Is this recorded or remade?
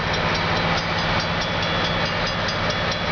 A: recorded